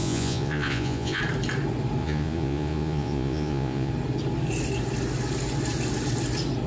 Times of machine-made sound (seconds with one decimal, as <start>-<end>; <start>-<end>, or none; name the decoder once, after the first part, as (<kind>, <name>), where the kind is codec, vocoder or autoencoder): 0.0-1.2 (vocoder, Vocos); 2.0-3.9